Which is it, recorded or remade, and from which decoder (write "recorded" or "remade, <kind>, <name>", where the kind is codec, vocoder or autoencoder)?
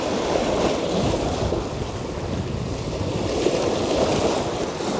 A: recorded